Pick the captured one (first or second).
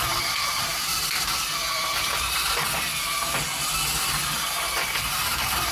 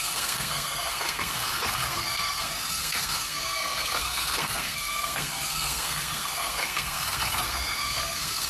first